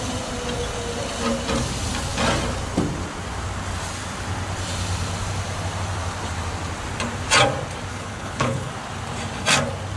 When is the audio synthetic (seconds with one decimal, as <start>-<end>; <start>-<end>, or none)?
7.9-8.7